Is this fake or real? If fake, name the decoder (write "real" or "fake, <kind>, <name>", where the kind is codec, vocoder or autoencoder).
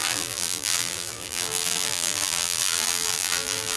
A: fake, vocoder, BigVGAN v2